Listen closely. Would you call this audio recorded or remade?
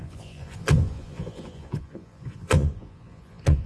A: remade